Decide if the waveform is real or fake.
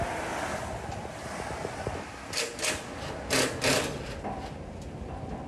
real